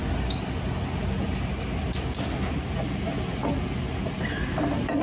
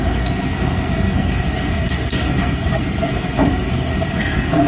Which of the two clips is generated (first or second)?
second